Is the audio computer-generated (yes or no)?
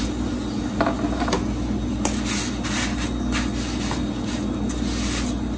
no